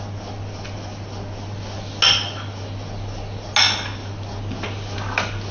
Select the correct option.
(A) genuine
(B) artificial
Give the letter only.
A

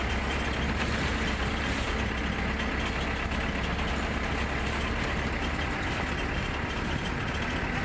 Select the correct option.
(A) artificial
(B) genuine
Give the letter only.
B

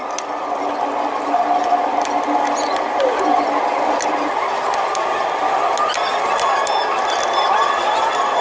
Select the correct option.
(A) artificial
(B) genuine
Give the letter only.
B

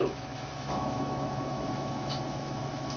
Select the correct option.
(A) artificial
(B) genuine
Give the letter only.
A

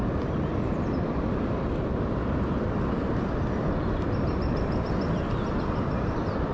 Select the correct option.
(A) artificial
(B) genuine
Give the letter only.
B